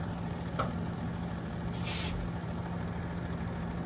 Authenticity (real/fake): real